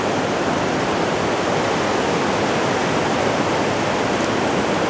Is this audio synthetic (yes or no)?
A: no